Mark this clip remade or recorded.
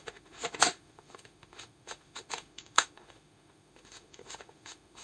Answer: remade